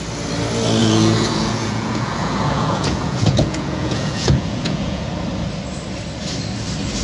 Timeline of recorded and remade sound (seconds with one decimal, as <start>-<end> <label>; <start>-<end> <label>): 0.0-0.8 recorded; 0.8-5.0 remade; 5.0-7.0 recorded

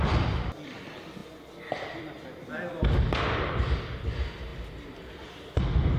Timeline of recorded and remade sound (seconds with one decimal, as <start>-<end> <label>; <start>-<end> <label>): 0.0-6.0 recorded

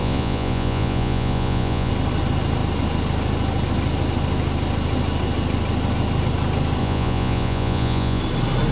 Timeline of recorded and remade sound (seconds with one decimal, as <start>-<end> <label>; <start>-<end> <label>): 0.0-1.9 remade; 1.9-6.8 recorded; 6.8-8.2 remade; 8.2-8.7 recorded